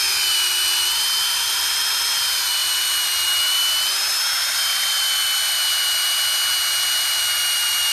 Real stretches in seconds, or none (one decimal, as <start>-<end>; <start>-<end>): 0.0-7.9